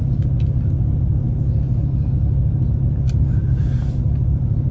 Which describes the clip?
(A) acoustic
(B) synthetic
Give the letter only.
A